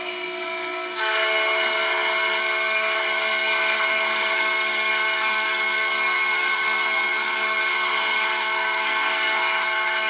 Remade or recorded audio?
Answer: remade